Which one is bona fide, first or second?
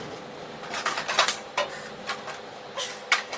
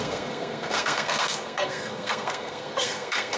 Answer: first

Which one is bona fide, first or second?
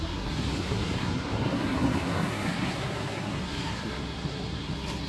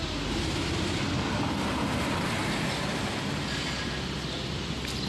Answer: second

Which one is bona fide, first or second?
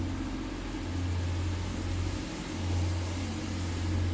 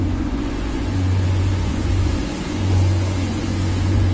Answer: first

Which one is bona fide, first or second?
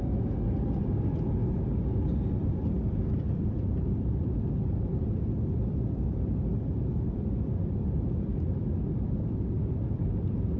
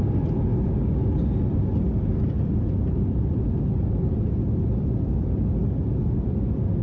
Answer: second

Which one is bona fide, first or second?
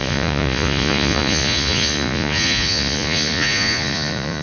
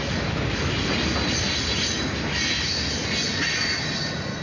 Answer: second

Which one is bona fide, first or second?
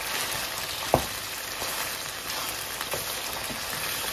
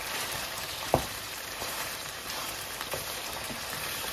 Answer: first